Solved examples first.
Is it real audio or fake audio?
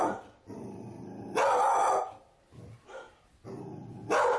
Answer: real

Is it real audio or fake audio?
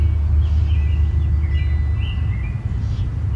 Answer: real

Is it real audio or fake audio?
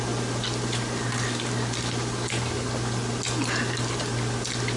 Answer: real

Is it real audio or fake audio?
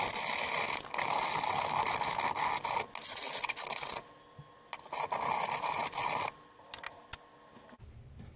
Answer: real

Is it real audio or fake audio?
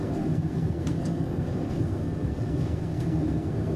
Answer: fake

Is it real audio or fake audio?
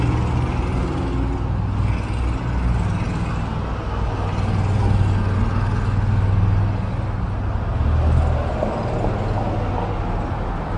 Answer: real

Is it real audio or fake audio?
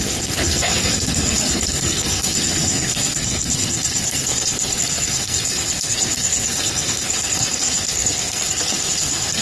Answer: fake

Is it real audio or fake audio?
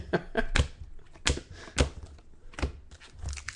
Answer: real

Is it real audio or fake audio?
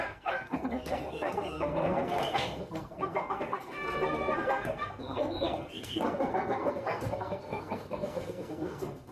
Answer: fake